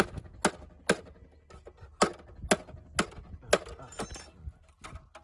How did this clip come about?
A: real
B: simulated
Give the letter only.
A